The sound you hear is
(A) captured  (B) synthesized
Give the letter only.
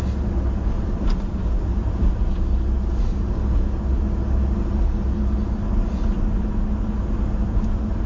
A